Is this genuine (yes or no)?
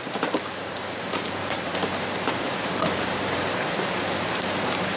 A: no